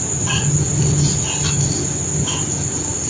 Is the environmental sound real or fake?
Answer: real